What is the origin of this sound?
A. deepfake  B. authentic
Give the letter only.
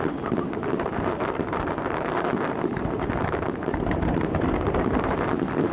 A